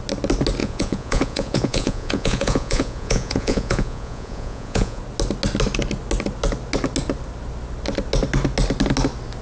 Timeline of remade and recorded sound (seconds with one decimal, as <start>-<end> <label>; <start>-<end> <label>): 0.0-0.6 recorded; 0.6-5.0 remade; 5.0-9.4 recorded